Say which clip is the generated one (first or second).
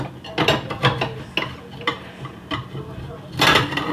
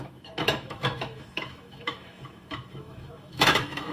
second